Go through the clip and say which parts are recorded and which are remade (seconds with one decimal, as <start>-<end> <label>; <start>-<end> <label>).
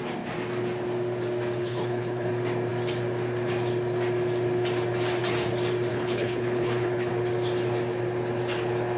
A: 0.0-1.6 recorded; 1.6-2.3 remade; 2.3-5.9 recorded; 5.9-7.1 remade; 7.1-9.0 recorded